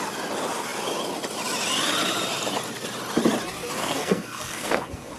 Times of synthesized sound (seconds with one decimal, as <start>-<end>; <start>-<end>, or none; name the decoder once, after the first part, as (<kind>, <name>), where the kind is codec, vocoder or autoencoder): 3.8-5.2 (codec, SNAC)